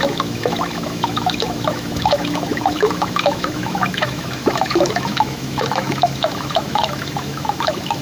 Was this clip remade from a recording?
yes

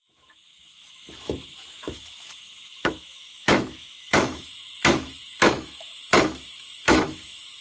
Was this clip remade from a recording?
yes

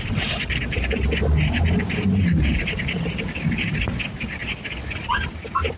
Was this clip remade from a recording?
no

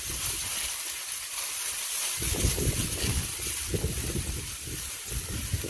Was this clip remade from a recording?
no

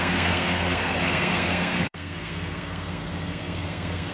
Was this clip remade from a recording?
yes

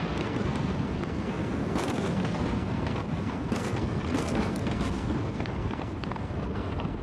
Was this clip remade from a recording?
yes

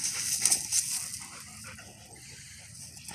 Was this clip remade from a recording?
no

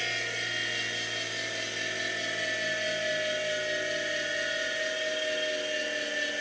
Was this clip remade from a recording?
no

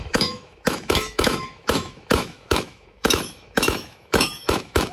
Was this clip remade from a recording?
yes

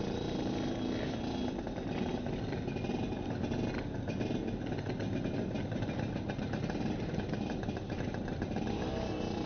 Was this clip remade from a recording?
no